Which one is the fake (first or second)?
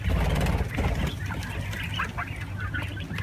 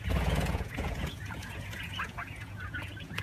second